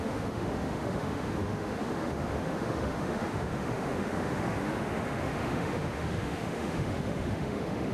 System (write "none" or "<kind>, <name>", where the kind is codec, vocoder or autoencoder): autoencoder, DAC-VAE